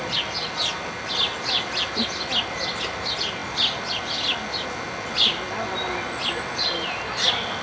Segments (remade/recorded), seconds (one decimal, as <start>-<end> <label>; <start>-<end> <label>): 0.0-7.6 recorded